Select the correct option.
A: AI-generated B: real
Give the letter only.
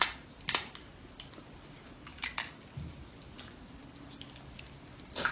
B